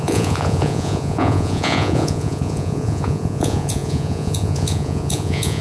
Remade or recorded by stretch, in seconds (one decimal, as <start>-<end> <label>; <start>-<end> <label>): 0.0-5.6 remade